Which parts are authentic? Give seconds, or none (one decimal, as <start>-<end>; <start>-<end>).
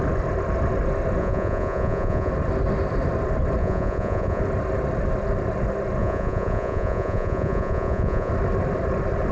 0.0-1.2; 2.3-3.6; 4.4-6.0; 8.3-9.3